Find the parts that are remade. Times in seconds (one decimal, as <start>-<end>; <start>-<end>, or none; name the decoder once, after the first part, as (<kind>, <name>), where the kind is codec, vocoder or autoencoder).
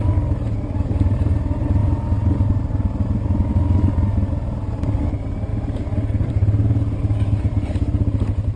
none